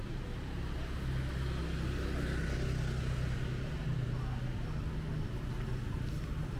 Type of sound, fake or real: real